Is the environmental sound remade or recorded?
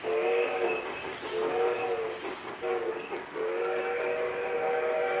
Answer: remade